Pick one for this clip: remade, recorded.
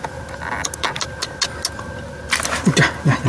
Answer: recorded